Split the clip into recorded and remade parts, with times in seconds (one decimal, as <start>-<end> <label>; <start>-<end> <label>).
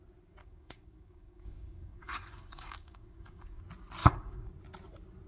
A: 0.0-0.4 recorded; 0.4-3.6 remade; 3.6-4.0 recorded; 4.0-4.5 remade; 4.5-5.3 recorded